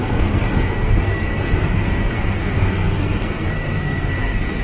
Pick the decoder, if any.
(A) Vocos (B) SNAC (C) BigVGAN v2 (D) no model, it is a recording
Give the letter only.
B